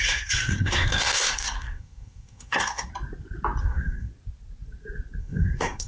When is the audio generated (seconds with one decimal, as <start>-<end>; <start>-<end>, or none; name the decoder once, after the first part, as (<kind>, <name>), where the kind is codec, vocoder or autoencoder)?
0.0-2.9 (codec, SNAC); 3.6-4.1; 5.2-5.9